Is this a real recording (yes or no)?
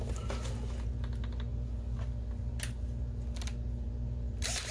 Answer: yes